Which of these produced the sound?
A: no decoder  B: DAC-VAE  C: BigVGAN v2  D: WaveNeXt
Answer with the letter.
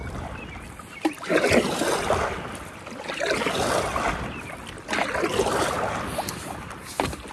A